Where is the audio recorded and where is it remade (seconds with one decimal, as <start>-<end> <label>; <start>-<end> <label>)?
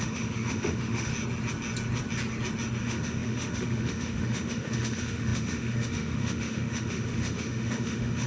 0.0-1.1 remade; 1.1-2.8 recorded; 2.8-8.3 remade